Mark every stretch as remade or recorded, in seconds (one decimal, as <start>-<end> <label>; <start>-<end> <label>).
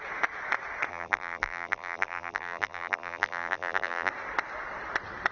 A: 0.0-0.9 recorded; 0.9-4.1 remade; 4.1-5.3 recorded